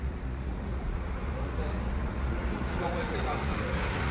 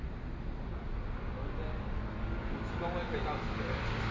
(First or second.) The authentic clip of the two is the second